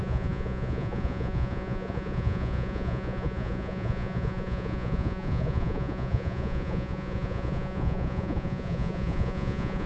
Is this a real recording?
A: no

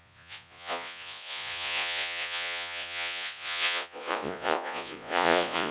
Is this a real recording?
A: no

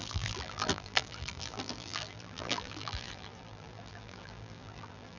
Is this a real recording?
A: no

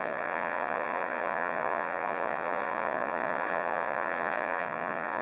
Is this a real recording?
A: no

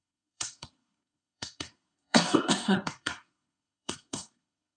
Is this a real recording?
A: no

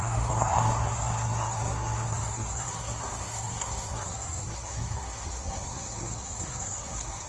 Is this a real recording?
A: no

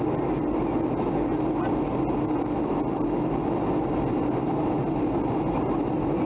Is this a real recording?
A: yes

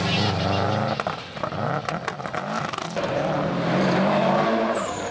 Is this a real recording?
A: yes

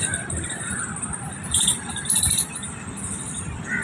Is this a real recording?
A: yes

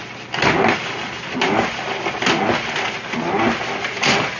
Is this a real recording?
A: yes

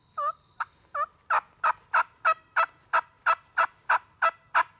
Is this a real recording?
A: yes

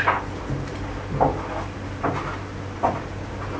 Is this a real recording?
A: yes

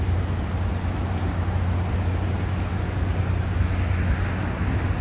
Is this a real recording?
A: yes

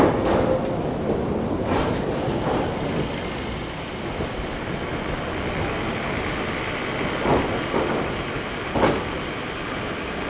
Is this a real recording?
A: yes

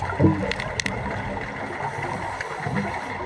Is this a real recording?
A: yes